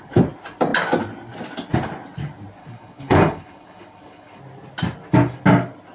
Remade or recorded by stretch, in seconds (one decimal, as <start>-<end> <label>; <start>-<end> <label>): 0.0-2.6 recorded; 2.6-4.4 remade; 4.4-5.9 recorded